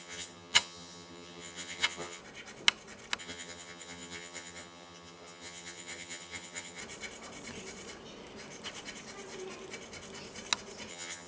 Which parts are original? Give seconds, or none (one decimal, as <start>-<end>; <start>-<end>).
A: 2.2-3.2; 6.8-10.9